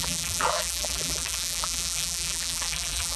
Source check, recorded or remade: remade